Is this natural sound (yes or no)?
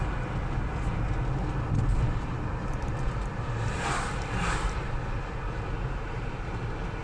yes